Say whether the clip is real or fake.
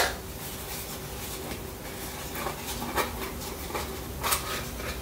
real